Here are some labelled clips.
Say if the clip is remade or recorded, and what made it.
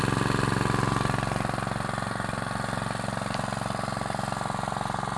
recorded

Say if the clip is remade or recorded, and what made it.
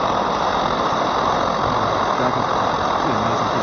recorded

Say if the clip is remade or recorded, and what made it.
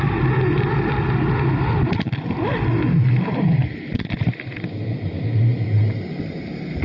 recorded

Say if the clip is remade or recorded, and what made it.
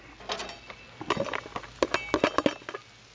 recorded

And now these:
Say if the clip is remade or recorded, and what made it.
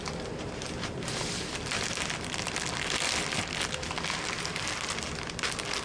recorded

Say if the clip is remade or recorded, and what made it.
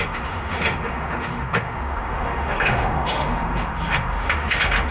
remade, autoencoder, DAC-VAE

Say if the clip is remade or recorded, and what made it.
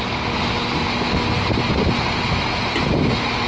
recorded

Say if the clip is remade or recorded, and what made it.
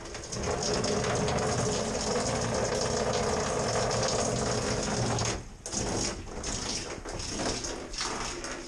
recorded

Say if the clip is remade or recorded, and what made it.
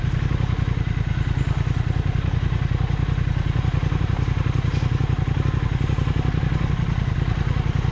recorded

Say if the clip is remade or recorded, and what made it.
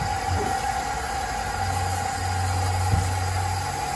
recorded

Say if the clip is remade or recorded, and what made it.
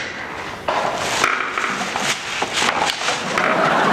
recorded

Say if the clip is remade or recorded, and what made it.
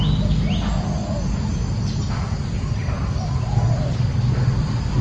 recorded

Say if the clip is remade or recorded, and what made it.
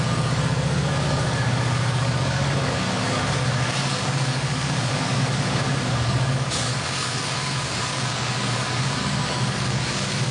remade, codec, DAC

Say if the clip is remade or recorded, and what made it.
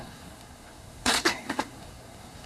remade, codec, SNAC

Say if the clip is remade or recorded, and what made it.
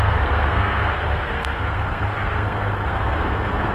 remade, codec, SNAC